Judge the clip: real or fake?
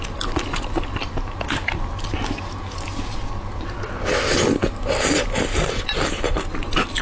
real